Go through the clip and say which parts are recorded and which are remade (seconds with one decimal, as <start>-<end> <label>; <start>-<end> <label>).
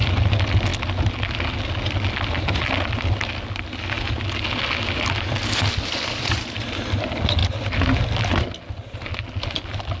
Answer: 0.0-10.0 recorded